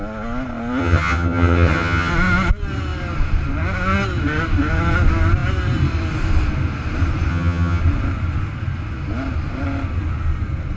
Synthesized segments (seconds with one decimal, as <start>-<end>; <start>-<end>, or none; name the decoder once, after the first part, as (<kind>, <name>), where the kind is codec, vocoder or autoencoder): 0.8-2.1 (vocoder, HiFi-GAN); 7.3-7.8